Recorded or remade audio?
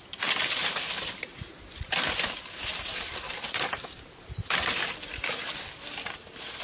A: recorded